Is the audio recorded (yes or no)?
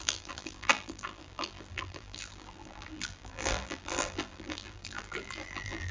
no